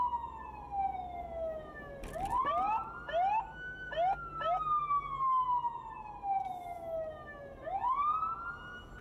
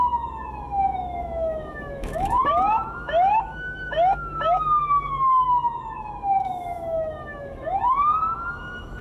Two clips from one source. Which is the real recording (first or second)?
first